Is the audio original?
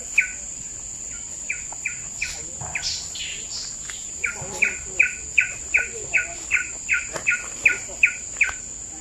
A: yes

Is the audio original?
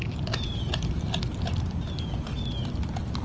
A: yes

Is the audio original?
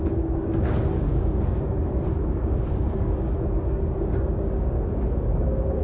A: no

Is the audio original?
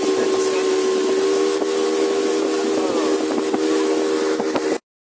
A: yes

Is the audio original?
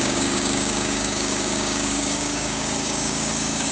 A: no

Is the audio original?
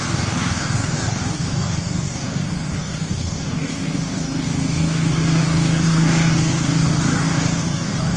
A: no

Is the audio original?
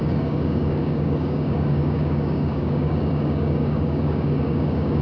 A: no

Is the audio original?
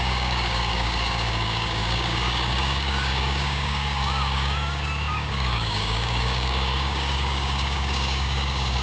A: no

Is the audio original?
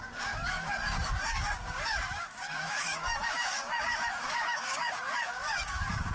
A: no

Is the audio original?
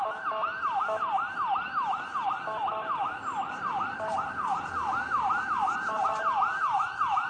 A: yes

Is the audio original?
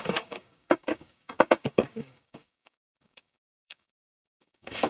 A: no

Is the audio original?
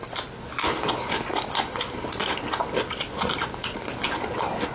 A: yes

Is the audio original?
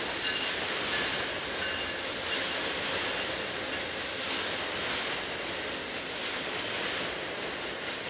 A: yes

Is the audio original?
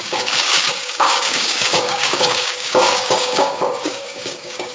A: no